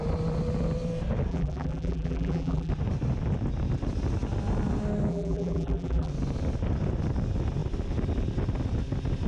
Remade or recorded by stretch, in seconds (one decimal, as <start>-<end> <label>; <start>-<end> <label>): 0.0-1.3 recorded; 1.3-2.7 remade; 2.7-5.1 recorded; 5.1-6.1 remade; 6.1-9.3 recorded